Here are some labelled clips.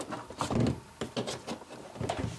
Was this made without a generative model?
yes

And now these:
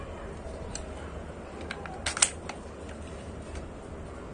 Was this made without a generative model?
yes